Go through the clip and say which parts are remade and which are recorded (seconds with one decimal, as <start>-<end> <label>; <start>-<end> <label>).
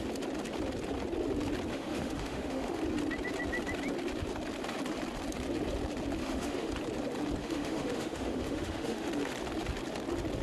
0.0-1.7 recorded; 1.7-2.8 remade; 2.8-6.2 recorded; 6.2-6.7 remade; 6.7-7.4 recorded; 7.4-9.1 remade; 9.1-10.4 recorded